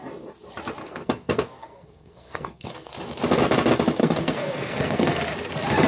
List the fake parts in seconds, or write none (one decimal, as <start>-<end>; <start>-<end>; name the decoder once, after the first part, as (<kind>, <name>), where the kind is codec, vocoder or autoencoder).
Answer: 0.8-2.9 (codec, SNAC); 4.0-5.2

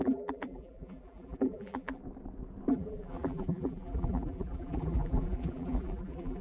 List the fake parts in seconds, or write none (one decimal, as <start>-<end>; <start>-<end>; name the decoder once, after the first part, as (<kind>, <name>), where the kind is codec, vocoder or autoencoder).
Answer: 0.0-2.0 (vocoder, BigVGAN v2); 2.7-6.4

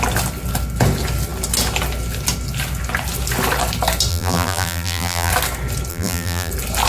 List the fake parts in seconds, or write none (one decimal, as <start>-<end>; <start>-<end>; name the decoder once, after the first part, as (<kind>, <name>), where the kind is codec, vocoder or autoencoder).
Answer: 4.1-5.3 (vocoder, BigVGAN v2); 5.9-6.5

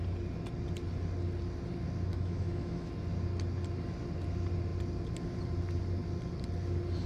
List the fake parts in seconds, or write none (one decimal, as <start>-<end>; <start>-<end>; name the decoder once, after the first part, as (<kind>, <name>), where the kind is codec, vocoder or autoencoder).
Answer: 2.1-2.9 (autoencoder, DAC-VAE)

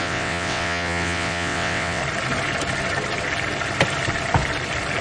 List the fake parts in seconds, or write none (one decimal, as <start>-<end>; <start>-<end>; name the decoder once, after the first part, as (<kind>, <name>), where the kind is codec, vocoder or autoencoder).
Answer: 0.0-2.0 (vocoder, WaveNeXt)

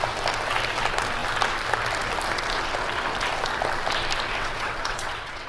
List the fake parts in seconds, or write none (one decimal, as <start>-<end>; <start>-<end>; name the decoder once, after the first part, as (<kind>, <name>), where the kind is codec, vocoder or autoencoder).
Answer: 4.4-5.5 (vocoder, WaveNeXt)

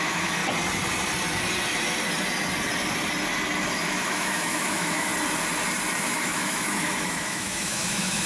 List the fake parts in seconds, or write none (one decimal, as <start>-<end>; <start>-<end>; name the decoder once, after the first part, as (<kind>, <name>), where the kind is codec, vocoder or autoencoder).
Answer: 0.0-0.4 (autoencoder, DAC-VAE); 3.8-5.1; 6.0-8.3